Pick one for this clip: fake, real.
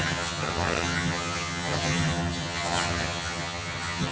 fake